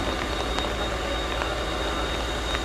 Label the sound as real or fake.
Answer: real